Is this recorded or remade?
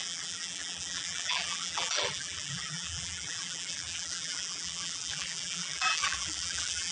remade